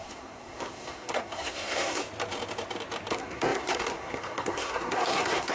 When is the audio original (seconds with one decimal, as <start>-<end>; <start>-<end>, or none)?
2.0-3.1